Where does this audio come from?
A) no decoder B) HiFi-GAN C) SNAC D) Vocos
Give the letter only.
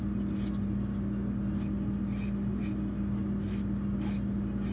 A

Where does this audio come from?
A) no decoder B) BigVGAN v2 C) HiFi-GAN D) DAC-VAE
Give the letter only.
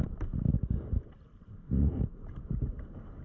B